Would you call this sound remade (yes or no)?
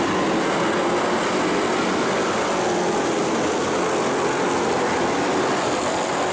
no